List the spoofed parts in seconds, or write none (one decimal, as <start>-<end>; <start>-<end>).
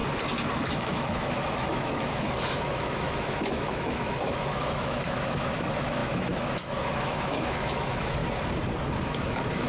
0.5-8.2; 9.0-9.7